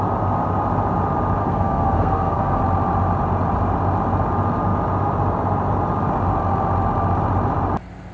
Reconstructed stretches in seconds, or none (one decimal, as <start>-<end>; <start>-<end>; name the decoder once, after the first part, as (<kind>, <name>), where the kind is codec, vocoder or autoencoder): 1.4-2.6 (codec, SNAC)